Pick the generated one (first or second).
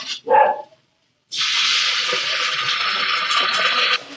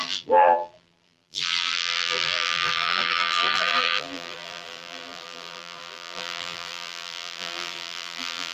second